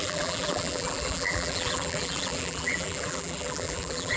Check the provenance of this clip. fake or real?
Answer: fake